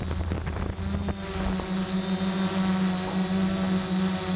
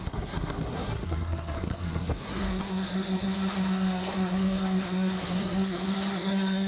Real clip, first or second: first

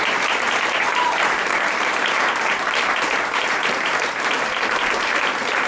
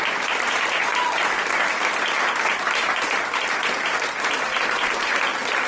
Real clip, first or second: second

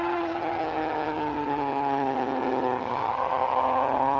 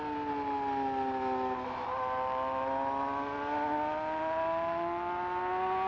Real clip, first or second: second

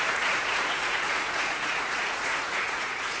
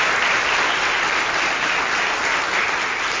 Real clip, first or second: second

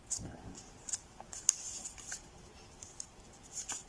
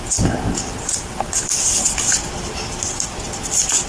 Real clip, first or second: second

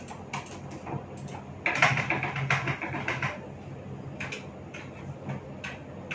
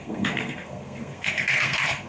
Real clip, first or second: first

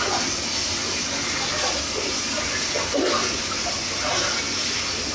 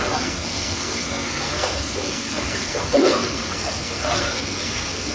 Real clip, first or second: first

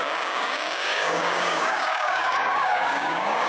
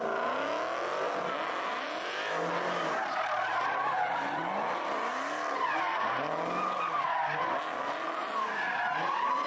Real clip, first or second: second